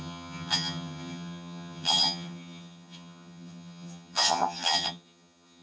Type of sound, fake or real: fake